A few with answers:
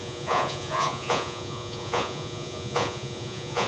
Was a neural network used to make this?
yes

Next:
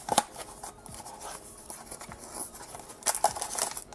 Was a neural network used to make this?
no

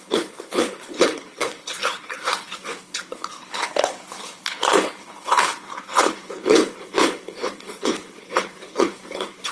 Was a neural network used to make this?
yes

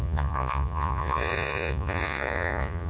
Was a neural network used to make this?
yes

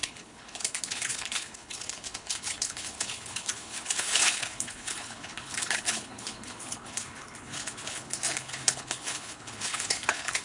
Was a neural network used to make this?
yes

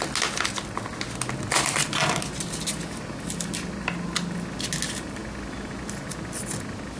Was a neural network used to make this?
no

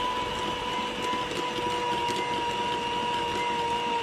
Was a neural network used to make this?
no